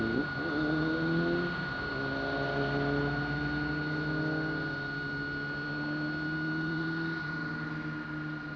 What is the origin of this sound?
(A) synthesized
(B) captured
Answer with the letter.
B